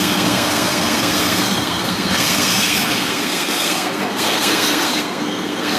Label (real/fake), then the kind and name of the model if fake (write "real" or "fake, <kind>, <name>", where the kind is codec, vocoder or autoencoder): fake, codec, SNAC